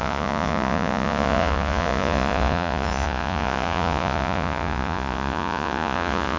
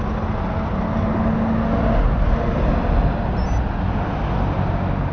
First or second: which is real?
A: second